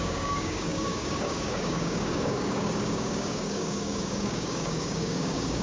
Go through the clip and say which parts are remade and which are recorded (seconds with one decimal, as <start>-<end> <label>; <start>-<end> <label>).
0.0-5.6 remade